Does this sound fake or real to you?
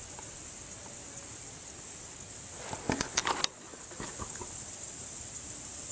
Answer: real